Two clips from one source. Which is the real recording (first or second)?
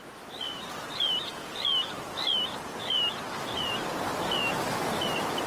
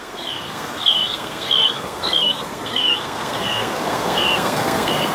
first